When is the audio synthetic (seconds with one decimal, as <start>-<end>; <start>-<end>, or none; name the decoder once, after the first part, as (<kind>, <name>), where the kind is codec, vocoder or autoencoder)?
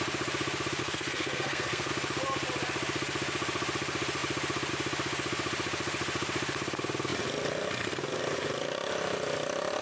0.8-1.9 (codec, SNAC)